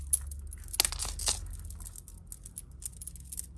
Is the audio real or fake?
real